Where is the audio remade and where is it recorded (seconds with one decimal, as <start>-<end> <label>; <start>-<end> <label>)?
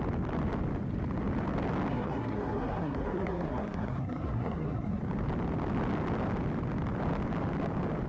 0.0-1.9 recorded; 1.9-5.0 remade; 5.0-8.1 recorded